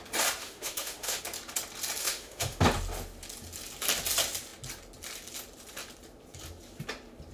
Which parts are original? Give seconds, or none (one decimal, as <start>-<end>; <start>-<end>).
0.0-0.4; 1.2-2.0; 2.6-7.3